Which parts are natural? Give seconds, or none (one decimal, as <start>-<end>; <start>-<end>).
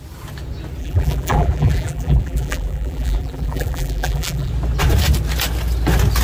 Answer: 0.0-0.8; 4.5-6.2